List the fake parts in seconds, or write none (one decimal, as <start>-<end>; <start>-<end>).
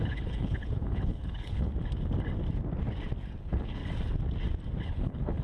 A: 0.0-1.7; 3.4-3.8; 4.9-5.4